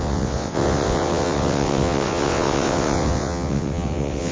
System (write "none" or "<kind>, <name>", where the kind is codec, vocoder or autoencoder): vocoder, WaveNeXt